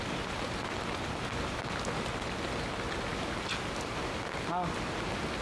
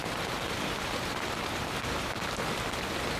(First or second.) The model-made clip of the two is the second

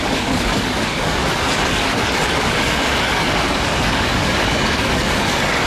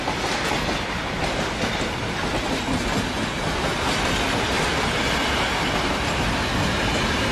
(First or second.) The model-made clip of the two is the first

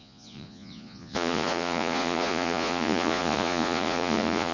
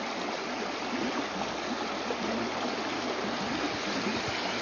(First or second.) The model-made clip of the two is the first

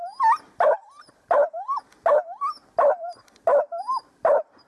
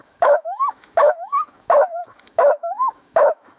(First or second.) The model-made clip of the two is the second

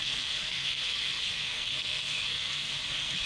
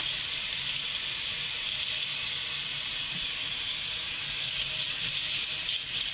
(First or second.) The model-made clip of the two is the first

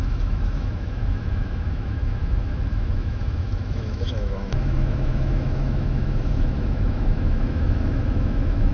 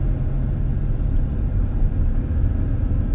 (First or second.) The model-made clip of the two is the first